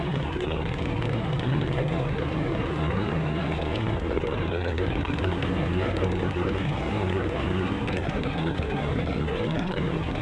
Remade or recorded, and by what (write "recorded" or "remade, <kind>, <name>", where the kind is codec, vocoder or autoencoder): remade, codec, SNAC